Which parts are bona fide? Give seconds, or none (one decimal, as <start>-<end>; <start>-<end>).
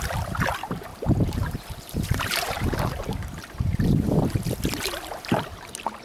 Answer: 0.0-0.9; 4.0-6.0